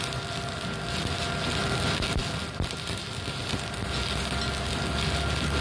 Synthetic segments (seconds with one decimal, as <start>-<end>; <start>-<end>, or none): none